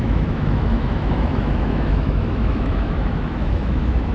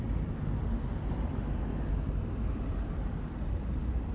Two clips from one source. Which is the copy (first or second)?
first